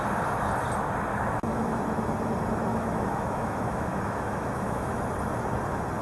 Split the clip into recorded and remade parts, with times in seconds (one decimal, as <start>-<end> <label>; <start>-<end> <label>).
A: 0.0-1.1 recorded; 1.1-1.8 remade; 1.8-2.7 recorded; 2.7-5.0 remade; 5.0-6.0 recorded